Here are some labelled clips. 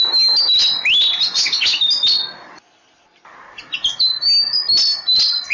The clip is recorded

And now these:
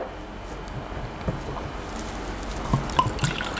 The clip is recorded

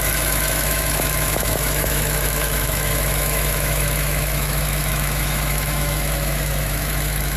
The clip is remade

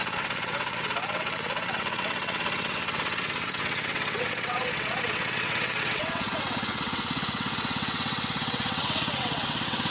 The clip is remade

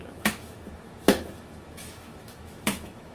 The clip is remade